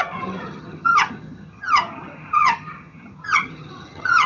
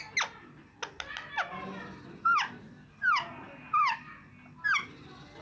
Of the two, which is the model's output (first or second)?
first